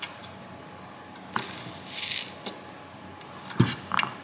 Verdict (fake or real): real